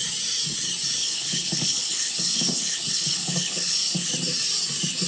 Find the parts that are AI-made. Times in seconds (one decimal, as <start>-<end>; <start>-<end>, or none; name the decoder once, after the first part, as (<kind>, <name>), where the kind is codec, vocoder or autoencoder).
1.0-4.1 (codec, HILCodec)